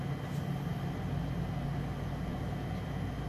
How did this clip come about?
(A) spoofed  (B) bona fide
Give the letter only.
B